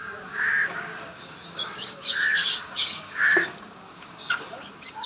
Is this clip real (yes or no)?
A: no